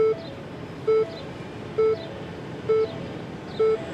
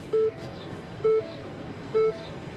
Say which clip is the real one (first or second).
first